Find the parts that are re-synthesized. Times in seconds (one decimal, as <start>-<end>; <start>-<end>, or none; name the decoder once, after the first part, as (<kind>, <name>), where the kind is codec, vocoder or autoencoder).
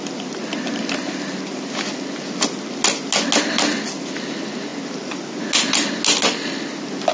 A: none